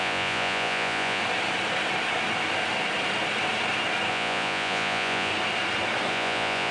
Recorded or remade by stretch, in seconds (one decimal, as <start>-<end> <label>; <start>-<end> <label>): 0.0-1.2 remade; 1.2-4.1 recorded; 4.1-5.3 remade; 5.3-6.1 recorded; 6.1-6.7 remade